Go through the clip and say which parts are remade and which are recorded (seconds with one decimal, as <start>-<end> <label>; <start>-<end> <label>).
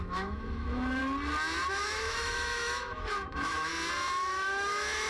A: 0.0-1.0 remade; 1.0-1.7 recorded; 1.7-3.7 remade; 3.7-4.3 recorded; 4.3-5.1 remade